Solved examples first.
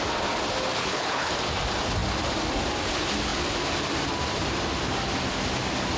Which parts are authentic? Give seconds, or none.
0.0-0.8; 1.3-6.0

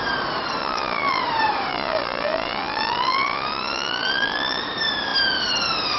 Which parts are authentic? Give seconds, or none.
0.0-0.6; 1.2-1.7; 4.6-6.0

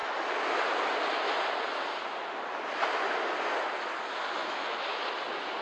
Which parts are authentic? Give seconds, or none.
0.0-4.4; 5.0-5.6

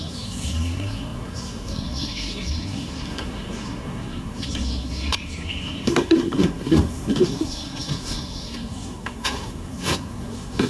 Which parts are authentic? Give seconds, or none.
none

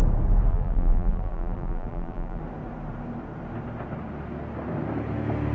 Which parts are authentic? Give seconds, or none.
0.0-0.5; 2.4-5.5